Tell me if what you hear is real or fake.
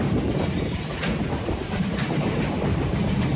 fake